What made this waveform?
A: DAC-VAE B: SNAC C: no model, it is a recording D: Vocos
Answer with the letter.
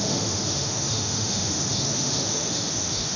A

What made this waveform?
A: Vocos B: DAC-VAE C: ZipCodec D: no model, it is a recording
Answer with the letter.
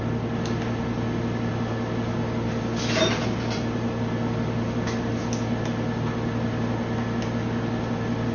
D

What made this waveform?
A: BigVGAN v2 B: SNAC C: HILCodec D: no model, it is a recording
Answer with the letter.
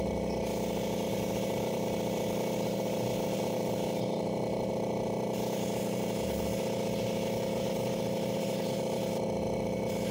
D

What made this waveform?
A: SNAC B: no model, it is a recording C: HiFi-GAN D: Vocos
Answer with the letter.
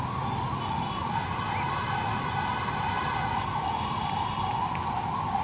B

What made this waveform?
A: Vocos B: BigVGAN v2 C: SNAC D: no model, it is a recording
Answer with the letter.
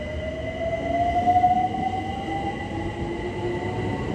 D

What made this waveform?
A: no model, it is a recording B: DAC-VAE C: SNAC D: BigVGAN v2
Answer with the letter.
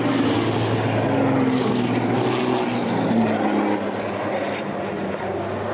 A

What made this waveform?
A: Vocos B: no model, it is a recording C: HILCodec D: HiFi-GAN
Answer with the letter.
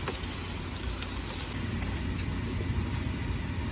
B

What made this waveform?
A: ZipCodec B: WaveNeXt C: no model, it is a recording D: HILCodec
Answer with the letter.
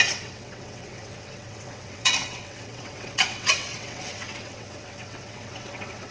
B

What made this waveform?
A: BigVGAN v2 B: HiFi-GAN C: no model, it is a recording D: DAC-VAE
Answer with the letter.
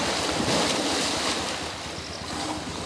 C